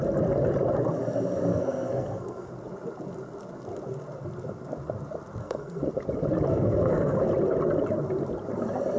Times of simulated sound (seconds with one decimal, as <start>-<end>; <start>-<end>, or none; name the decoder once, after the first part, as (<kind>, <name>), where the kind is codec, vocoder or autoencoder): 1.5-2.5 (codec, SNAC); 5.4-5.9; 6.5-7.2